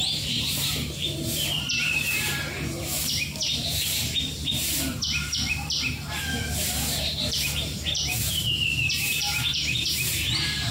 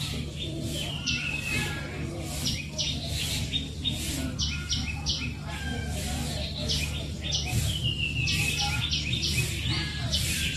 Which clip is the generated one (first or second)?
first